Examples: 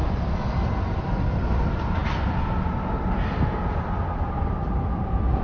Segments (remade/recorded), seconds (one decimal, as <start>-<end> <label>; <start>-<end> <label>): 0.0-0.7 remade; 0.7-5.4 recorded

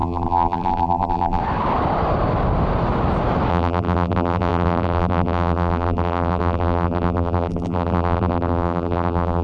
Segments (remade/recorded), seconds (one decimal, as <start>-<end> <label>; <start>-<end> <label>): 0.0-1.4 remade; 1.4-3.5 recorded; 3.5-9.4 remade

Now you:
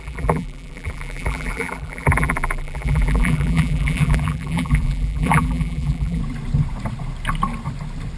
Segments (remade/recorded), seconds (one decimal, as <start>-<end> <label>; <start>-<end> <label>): 0.0-6.2 remade; 6.2-8.2 recorded